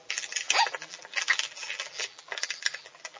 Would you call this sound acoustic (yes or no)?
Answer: no